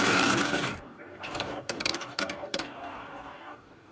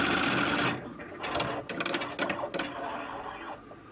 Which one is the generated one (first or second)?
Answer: first